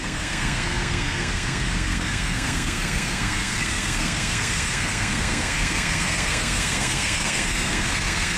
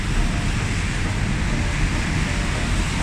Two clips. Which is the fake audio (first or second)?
first